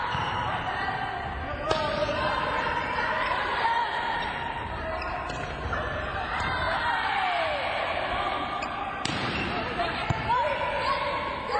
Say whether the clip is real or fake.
fake